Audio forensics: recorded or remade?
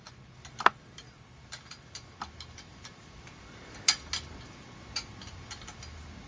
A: recorded